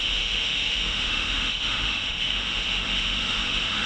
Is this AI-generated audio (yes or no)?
yes